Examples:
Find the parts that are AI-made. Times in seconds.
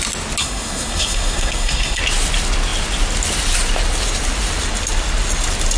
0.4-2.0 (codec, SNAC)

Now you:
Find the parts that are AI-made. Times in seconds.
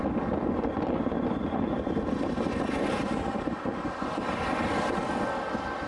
none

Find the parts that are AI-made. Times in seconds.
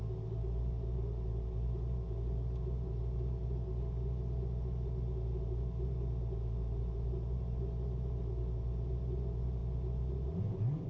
none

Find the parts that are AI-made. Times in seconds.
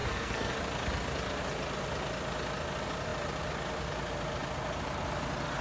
0.0-0.5 (codec, SNAC)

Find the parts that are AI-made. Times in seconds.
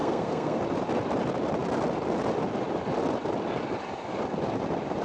0.0-0.6 (codec, SNAC)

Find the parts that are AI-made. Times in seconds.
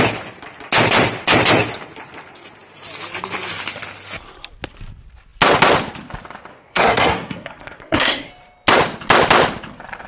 6.5-8.3 (codec, SNAC)